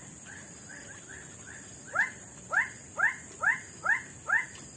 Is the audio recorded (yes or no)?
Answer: yes